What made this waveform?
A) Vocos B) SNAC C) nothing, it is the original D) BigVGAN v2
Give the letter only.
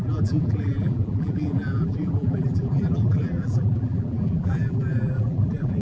D